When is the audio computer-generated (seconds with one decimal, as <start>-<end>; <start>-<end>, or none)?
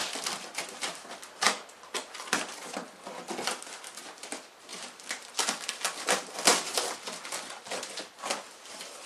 0.0-4.7; 5.3-9.1